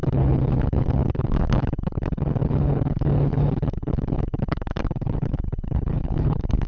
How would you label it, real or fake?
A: fake